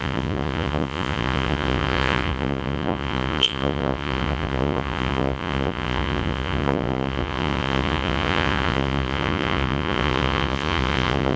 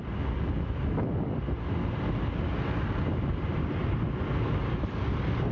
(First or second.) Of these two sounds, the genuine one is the second